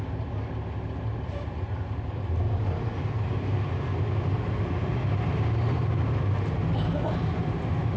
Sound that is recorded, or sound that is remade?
recorded